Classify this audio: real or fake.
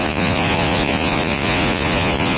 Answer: fake